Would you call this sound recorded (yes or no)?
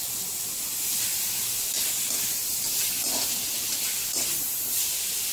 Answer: yes